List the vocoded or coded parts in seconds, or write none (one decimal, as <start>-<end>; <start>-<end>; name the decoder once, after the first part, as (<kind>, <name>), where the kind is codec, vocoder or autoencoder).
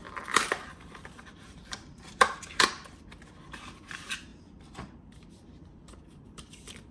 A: 0.0-3.3 (vocoder, BigVGAN v2); 4.3-6.9